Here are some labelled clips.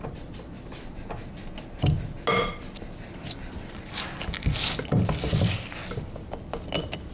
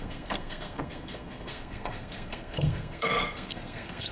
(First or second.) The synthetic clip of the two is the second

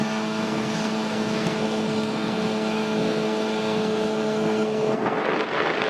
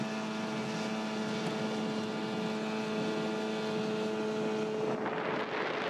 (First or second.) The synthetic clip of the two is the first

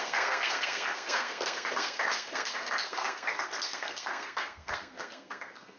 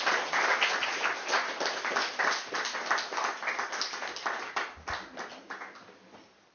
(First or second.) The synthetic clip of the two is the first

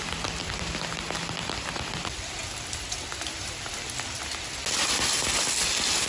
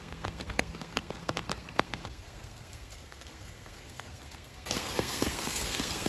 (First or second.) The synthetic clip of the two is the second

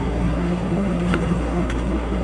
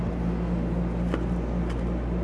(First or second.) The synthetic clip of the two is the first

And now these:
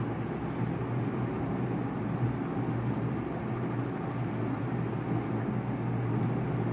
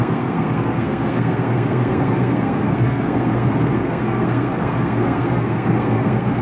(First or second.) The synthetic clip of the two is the second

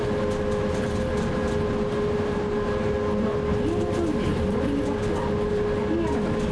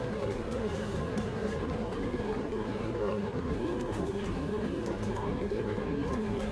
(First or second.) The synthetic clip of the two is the second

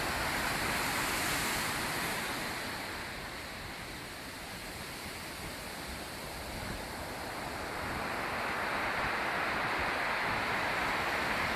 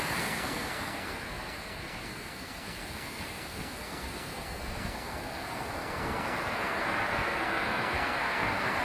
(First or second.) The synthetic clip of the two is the second